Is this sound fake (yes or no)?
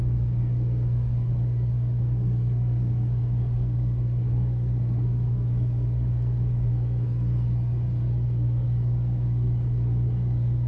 yes